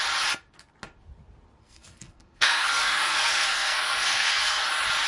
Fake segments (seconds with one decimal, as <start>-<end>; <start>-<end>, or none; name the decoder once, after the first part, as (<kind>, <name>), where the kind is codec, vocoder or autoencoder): 1.6-4.6 (codec, SNAC)

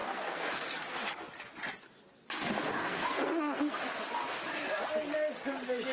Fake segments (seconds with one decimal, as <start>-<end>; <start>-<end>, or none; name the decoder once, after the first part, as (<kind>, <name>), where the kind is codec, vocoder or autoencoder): 0.0-1.1 (codec, SNAC); 2.8-3.8

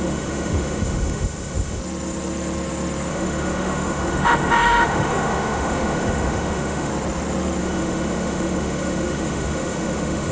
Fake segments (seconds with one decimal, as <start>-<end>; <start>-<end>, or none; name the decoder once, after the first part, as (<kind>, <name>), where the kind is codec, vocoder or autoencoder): 0.0-1.8 (autoencoder, DAC-VAE); 3.1-6.9; 7.6-10.3

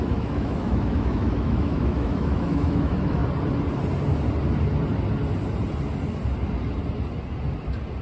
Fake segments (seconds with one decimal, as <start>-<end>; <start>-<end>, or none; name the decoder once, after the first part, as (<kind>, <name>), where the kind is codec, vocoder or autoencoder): 0.0-3.2 (autoencoder, DAC-VAE)

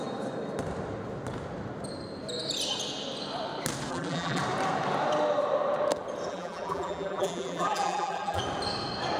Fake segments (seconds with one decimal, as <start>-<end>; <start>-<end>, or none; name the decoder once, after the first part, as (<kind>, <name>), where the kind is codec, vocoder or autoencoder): 3.9-4.4 (vocoder, BigVGAN v2); 6.3-8.4

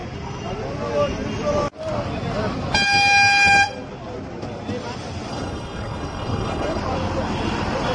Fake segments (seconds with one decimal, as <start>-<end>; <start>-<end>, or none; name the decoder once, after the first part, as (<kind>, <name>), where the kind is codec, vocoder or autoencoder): 5.3-6.8 (codec, HILCodec)

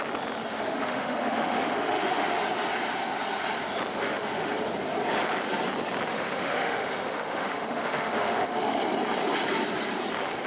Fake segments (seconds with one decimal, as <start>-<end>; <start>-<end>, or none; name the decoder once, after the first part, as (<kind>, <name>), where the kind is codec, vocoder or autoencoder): 0.5-2.4 (autoencoder, DAC-VAE); 3.9-4.5; 6.1-8.8